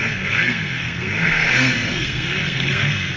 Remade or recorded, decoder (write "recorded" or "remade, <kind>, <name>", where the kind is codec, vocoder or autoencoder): remade, codec, SNAC